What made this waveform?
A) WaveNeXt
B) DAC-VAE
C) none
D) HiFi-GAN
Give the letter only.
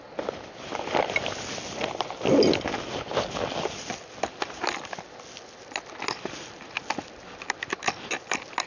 C